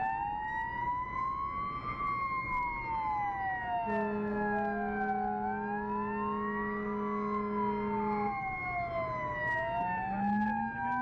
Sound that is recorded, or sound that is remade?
recorded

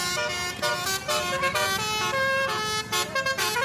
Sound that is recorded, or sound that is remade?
remade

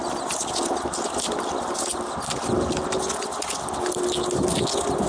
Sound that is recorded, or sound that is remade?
recorded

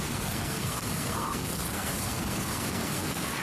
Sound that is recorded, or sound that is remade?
remade